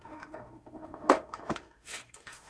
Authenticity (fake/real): fake